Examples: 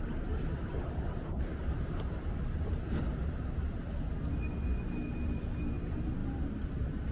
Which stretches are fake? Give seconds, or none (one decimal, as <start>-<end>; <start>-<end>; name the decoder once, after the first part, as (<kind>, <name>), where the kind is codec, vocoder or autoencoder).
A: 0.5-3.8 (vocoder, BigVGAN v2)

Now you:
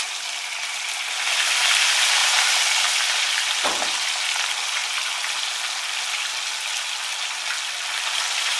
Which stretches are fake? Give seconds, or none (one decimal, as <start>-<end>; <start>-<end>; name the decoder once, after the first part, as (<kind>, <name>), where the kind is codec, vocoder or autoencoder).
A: 2.2-2.8 (vocoder, BigVGAN v2)

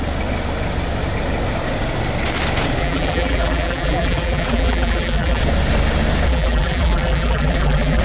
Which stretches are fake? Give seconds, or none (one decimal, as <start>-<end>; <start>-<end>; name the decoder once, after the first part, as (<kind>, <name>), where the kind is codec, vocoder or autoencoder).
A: 2.8-5.4 (vocoder, BigVGAN v2); 6.3-8.0

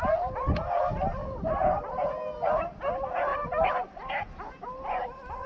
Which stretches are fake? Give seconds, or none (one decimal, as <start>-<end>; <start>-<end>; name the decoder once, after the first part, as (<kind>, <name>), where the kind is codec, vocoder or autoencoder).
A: 1.2-2.1 (vocoder, BigVGAN v2); 3.3-4.1

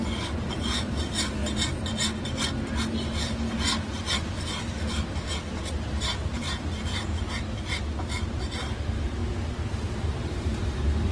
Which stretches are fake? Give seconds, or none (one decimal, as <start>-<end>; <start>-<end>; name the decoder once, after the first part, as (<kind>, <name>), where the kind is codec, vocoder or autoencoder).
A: 0.0-1.4 (vocoder, BigVGAN v2); 6.0-6.9; 8.0-9.2; 10.0-11.1